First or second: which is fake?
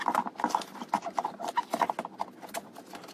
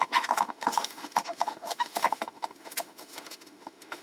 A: second